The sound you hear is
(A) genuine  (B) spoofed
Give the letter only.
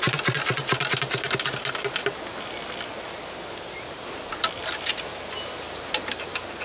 A